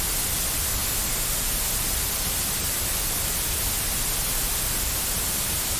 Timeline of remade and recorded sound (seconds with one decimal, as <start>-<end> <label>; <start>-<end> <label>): 0.0-5.8 recorded